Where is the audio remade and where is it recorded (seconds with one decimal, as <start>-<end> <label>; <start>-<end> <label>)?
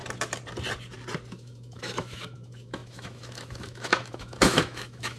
0.0-1.3 recorded; 1.3-5.2 remade